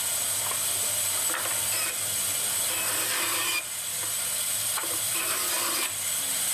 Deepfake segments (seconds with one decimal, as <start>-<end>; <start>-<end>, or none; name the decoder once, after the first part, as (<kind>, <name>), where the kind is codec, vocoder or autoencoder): 4.5-5.2 (vocoder, BigVGAN v2)